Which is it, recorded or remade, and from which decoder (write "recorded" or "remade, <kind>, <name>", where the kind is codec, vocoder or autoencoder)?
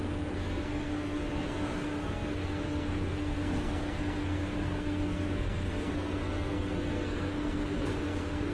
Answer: remade, codec, SNAC